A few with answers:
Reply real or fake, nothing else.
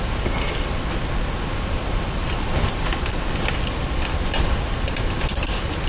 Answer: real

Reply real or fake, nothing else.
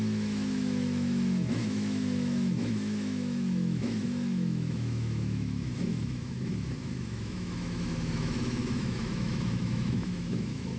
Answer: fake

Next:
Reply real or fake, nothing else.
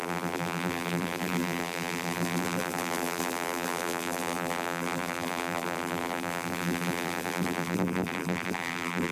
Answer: fake